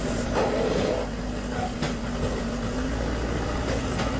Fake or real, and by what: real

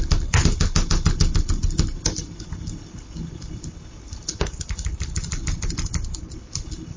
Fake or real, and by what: real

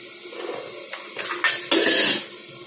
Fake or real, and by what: real